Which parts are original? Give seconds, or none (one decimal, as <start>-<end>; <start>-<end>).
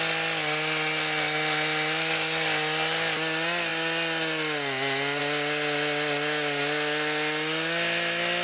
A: 0.0-8.4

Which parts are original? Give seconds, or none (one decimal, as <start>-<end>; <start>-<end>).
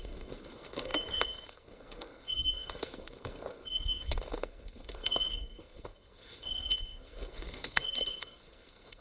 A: none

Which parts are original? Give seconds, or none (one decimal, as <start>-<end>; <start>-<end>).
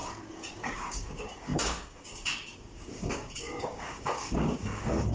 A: none